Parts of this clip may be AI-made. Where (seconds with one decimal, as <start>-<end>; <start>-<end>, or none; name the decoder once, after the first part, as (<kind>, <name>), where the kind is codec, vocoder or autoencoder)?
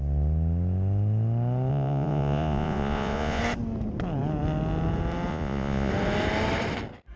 1.7-3.4 (vocoder, Vocos); 5.3-5.9